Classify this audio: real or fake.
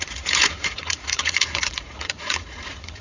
fake